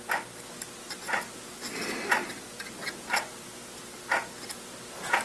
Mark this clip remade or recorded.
recorded